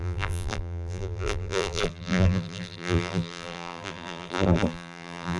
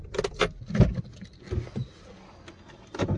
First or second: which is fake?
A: first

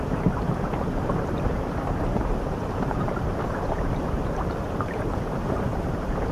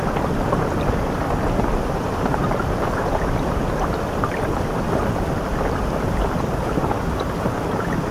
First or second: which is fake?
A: first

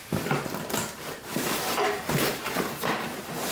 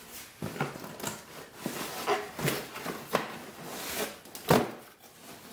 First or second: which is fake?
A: first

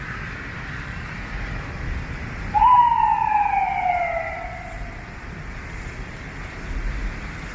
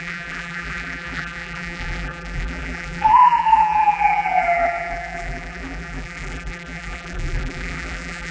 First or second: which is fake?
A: second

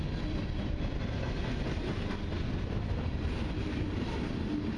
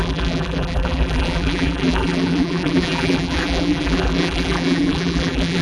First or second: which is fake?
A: second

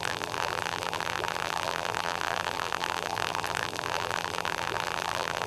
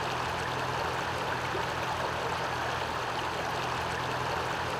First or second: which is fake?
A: first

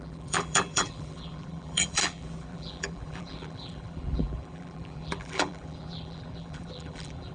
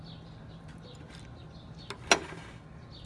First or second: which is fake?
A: first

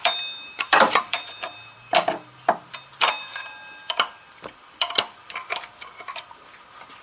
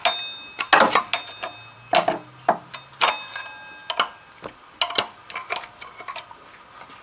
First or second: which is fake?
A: first